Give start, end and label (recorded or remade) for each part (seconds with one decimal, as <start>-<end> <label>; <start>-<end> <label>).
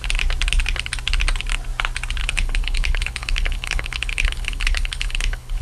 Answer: 0.0-2.2 recorded; 2.2-5.6 remade